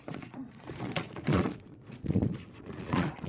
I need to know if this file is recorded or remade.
remade